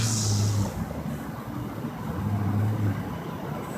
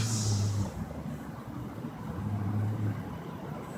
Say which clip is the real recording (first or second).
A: first